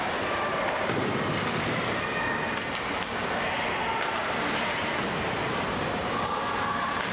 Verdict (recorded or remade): recorded